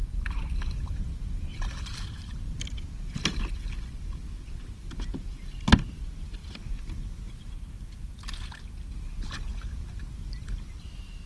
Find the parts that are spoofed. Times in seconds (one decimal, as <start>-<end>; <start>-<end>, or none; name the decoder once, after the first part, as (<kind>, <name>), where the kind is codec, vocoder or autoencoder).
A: 0.0-3.4 (vocoder, BigVGAN v2)